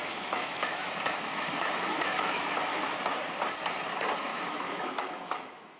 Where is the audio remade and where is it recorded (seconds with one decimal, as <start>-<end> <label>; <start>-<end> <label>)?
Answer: 0.0-3.0 remade; 3.0-4.3 recorded; 4.3-5.8 remade